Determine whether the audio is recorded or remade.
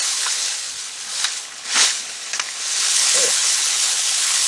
remade